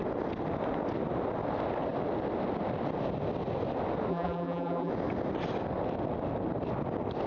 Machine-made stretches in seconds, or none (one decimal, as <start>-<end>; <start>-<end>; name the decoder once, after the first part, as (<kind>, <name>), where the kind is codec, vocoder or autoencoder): 4.1-4.9 (vocoder, BigVGAN v2)